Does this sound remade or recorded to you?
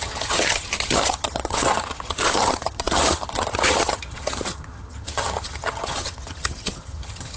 remade